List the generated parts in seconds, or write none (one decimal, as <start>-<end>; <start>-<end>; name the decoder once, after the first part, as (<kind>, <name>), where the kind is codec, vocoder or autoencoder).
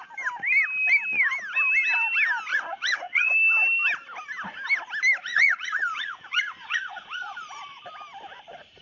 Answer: 2.5-3.3 (vocoder, Vocos); 5.2-7.8